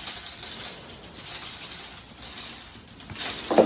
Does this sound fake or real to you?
real